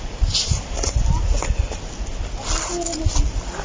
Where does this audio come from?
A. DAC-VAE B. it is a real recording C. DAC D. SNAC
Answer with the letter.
B